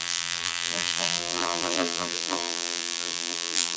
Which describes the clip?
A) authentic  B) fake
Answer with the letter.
B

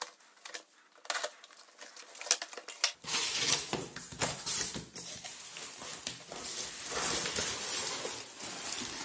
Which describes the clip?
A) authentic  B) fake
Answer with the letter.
A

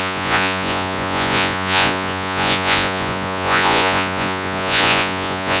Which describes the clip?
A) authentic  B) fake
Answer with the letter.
B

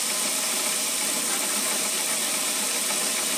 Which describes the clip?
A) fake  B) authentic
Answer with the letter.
B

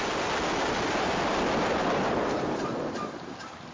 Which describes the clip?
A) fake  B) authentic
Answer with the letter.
B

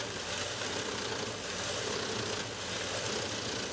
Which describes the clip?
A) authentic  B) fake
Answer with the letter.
A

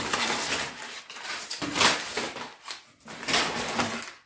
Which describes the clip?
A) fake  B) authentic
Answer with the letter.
B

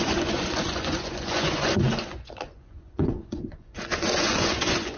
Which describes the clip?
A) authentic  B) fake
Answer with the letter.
B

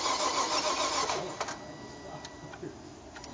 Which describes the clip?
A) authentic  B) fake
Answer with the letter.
A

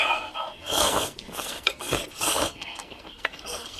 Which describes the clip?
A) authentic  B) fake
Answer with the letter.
B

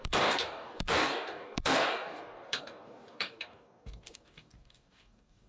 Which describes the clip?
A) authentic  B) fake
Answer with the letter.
B